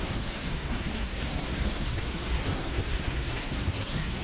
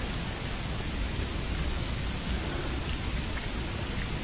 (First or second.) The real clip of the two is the second